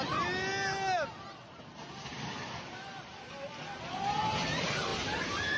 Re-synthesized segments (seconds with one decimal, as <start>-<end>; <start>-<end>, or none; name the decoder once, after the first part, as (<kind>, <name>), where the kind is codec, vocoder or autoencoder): 2.1-3.2 (vocoder, BigVGAN v2)